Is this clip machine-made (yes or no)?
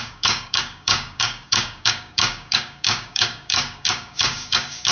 yes